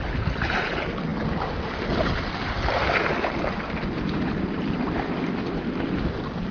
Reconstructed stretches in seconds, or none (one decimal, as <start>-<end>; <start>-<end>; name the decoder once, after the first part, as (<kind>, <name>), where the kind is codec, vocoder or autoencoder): none

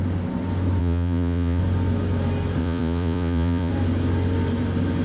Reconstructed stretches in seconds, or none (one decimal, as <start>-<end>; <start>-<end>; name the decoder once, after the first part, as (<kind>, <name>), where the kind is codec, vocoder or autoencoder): 0.8-1.6 (vocoder, Vocos); 2.6-3.7

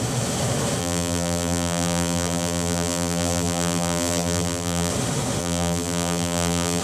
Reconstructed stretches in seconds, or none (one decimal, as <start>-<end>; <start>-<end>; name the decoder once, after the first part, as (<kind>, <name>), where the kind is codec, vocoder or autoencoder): 0.8-4.9 (vocoder, BigVGAN v2); 5.4-6.8

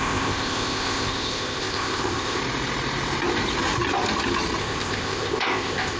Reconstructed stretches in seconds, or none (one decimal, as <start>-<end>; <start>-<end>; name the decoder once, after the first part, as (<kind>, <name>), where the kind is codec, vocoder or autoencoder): 0.0-2.4 (codec, ZipCodec); 4.6-6.0

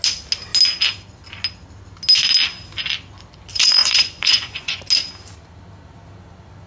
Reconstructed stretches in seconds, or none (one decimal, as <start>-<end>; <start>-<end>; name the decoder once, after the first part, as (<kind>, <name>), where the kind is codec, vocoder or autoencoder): 3.5-4.8 (vocoder, Vocos)